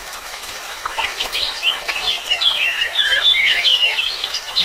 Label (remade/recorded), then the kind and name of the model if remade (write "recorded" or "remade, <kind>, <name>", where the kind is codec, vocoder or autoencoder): remade, codec, DAC